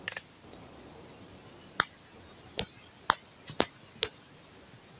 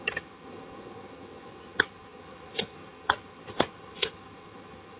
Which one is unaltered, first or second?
first